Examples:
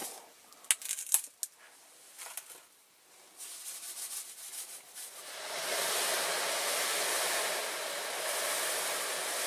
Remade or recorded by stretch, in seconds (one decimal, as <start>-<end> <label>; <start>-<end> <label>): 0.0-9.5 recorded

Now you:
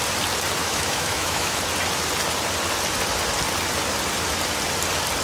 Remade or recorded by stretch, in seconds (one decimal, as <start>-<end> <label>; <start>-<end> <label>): 0.0-0.6 recorded; 0.6-1.6 remade; 1.6-5.2 recorded

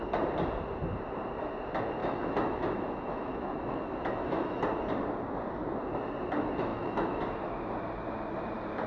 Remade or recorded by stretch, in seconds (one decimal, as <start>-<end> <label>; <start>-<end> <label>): 0.0-2.0 recorded; 2.0-4.6 remade; 4.6-6.7 recorded; 6.7-7.2 remade; 7.2-8.9 recorded

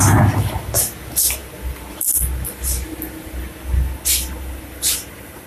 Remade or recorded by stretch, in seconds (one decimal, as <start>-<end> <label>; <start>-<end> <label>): 0.0-5.5 recorded

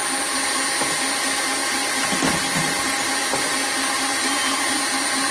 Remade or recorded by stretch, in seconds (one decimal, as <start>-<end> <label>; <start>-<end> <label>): 0.0-5.3 recorded